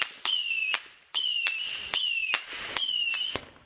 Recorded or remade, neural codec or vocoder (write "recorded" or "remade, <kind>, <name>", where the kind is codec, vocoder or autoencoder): recorded